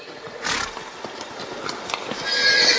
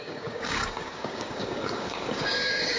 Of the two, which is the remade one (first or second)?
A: second